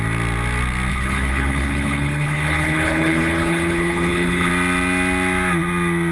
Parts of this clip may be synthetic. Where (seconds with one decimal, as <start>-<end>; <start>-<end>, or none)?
0.9-4.5